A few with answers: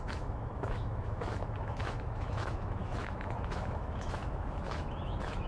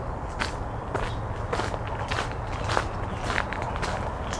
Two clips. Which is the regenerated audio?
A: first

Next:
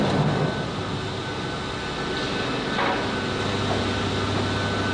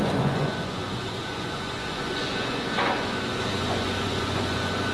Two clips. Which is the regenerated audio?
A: second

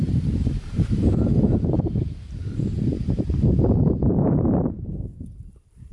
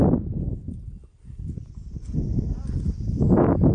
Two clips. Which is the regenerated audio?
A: first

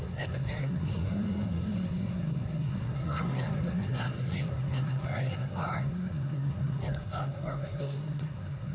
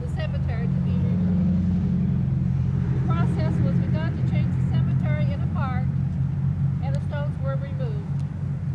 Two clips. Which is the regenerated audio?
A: first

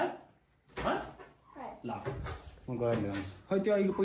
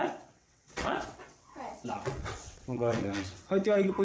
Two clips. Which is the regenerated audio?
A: second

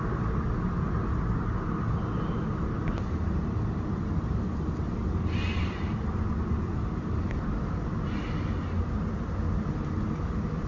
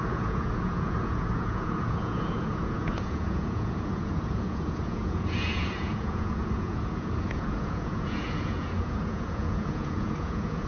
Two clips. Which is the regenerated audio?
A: second